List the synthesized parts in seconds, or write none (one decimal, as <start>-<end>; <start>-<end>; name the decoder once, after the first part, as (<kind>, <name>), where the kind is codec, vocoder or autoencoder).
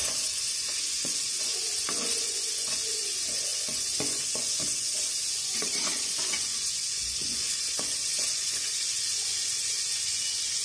0.0-10.6 (vocoder, Vocos)